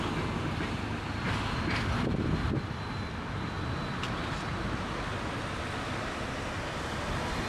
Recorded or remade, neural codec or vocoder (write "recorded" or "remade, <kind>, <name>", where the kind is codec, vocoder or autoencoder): recorded